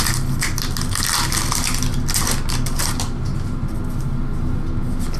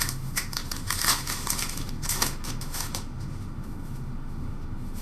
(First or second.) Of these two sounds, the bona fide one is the first